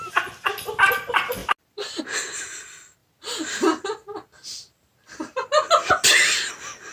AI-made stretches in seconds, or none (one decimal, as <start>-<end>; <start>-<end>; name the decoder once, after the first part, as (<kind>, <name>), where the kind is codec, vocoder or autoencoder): none